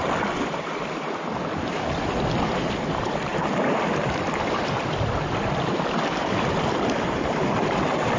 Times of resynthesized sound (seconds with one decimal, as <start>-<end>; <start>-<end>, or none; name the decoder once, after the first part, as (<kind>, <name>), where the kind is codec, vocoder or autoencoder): none